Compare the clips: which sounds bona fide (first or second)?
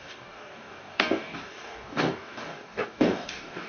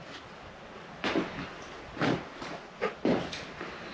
second